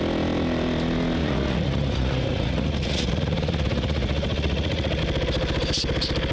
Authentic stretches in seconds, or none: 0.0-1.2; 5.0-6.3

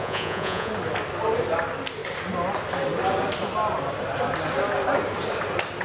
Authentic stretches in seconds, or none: 0.7-5.8

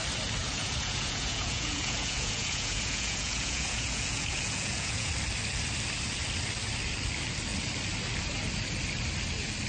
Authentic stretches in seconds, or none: 0.0-0.4; 5.1-9.7

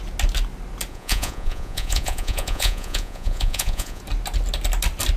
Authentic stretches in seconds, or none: 0.0-0.9; 4.0-5.2

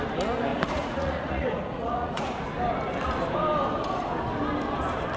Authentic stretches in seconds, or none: 0.0-0.5; 2.4-5.2